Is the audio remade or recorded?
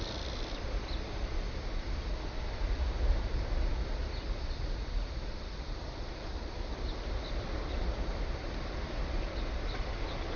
recorded